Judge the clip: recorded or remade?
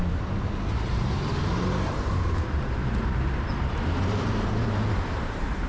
remade